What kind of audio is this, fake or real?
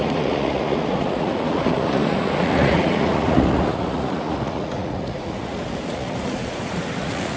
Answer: fake